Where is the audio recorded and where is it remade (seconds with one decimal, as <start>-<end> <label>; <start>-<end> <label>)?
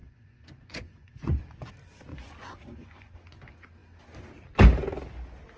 0.0-1.7 remade; 1.7-2.1 recorded; 2.1-3.1 remade; 3.1-5.6 recorded